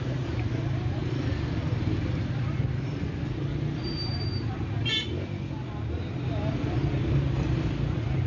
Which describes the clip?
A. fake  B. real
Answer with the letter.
B